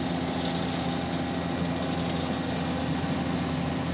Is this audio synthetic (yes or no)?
no